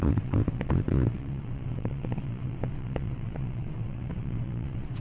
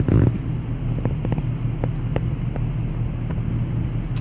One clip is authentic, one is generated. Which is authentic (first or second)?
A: second